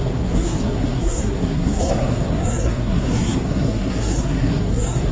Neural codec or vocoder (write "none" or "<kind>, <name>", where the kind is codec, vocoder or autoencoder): codec, SNAC